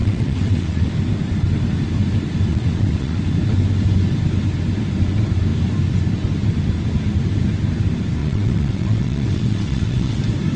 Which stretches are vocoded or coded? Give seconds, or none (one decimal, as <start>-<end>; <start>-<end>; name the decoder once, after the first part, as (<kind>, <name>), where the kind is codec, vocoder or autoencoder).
0.0-0.9 (vocoder, WaveNeXt); 2.5-3.2; 8.2-10.2